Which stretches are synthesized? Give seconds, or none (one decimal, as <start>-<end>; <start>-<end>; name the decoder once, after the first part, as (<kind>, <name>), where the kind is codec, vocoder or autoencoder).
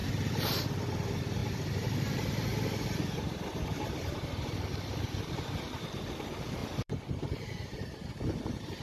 0.0-0.6 (vocoder, BigVGAN v2); 1.4-2.2; 6.6-8.8